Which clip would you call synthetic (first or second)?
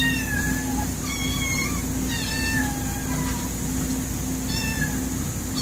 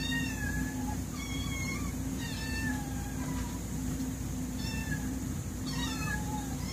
second